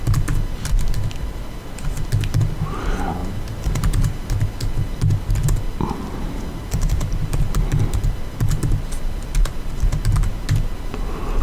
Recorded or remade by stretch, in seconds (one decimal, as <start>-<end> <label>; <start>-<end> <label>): 0.0-6.5 recorded; 6.5-7.2 remade; 7.2-11.4 recorded